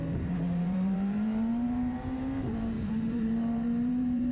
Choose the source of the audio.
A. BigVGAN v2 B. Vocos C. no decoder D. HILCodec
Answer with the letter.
A